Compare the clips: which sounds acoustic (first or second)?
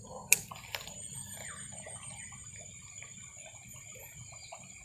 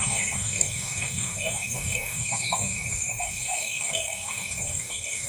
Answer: first